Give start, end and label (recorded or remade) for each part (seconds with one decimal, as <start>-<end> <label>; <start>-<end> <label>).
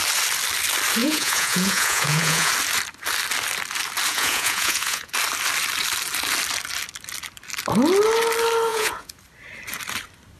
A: 0.0-1.0 recorded; 1.0-2.5 remade; 2.5-4.1 recorded; 4.1-5.1 remade; 5.1-8.7 recorded; 8.7-9.2 remade; 9.2-10.4 recorded